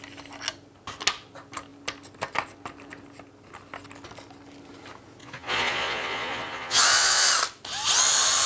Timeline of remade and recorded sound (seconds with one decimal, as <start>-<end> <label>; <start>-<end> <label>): 0.0-5.2 recorded; 5.2-7.3 remade; 7.3-8.5 recorded

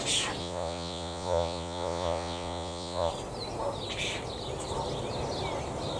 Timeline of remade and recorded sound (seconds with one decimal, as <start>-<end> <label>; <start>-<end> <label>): 0.0-0.4 recorded; 0.4-3.1 remade; 3.1-6.0 recorded

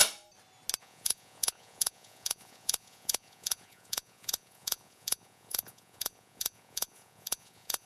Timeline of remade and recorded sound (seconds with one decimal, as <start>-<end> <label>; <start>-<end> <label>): 0.0-0.8 recorded; 0.8-7.9 remade